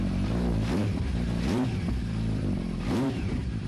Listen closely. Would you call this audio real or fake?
fake